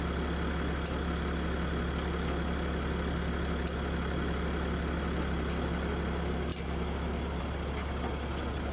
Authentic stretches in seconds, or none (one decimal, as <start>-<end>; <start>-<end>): 0.0-8.7

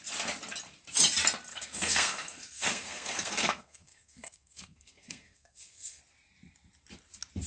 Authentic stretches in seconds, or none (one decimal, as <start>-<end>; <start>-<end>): 0.0-1.5; 6.0-7.5

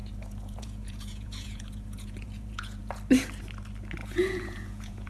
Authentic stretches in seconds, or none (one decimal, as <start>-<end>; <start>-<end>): 2.9-4.0

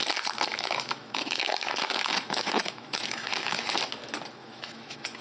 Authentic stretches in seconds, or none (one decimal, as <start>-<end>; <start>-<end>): 0.0-0.5; 3.6-4.4

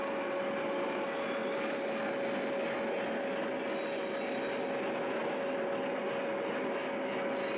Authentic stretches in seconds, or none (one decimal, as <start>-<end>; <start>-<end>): 0.0-7.6

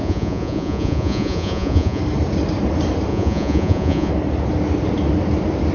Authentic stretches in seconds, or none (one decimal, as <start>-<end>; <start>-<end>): 2.0-3.1; 4.1-5.7

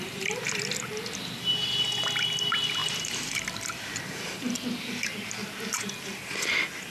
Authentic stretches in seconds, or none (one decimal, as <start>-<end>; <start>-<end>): 0.0-2.8; 3.4-6.9